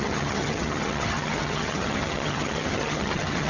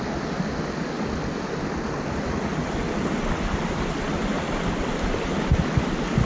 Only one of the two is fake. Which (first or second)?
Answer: first